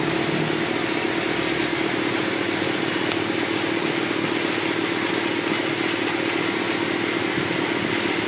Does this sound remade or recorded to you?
recorded